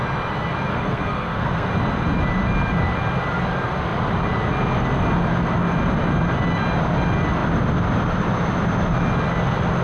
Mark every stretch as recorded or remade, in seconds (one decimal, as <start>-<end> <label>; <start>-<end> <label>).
0.0-0.7 recorded; 0.7-1.7 remade; 1.7-9.8 recorded